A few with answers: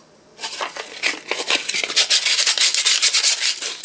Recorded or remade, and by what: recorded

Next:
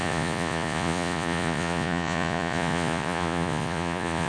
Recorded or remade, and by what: remade, vocoder, Vocos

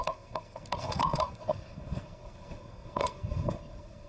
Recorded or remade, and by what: remade, codec, SNAC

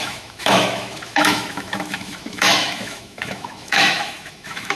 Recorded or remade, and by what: remade, autoencoder, DAC-VAE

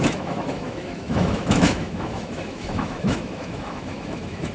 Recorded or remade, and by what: remade, autoencoder, DAC-VAE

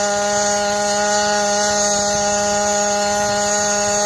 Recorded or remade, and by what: recorded